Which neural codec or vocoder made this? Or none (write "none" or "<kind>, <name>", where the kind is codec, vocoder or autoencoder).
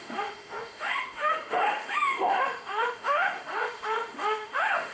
autoencoder, DAC-VAE